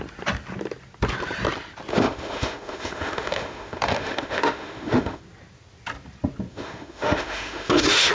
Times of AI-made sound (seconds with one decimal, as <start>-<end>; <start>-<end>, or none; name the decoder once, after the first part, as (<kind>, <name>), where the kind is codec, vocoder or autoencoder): 1.9-5.2 (autoencoder, DAC-VAE); 6.5-8.1

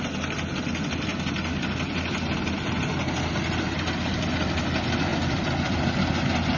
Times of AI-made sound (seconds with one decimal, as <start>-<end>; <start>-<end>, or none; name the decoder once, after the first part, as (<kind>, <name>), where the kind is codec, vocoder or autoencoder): none

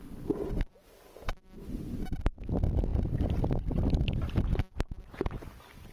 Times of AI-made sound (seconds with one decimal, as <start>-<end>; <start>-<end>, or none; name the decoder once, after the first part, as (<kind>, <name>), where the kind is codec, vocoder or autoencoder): none

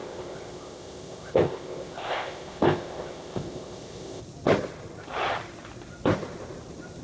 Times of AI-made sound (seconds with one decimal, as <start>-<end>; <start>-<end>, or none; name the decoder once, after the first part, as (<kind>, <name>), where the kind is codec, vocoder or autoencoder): 0.0-4.2 (codec, ZipCodec)

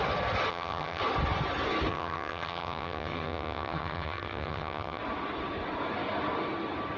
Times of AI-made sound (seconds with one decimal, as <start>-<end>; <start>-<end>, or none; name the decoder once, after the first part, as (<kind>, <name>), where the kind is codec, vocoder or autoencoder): 0.5-1.0 (vocoder, HiFi-GAN); 1.9-5.0

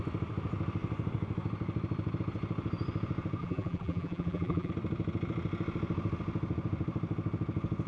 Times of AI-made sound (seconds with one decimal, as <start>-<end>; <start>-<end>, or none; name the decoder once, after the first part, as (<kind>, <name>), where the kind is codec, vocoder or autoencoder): 3.4-4.7 (vocoder, BigVGAN v2)

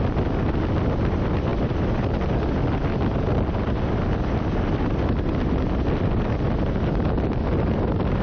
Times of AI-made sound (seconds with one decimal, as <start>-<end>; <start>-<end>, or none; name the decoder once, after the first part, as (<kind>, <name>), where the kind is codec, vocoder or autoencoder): none